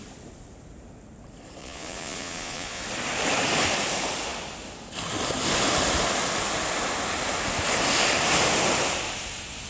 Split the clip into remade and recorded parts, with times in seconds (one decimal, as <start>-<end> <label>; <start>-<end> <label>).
0.0-1.6 recorded; 1.6-2.8 remade; 2.8-9.7 recorded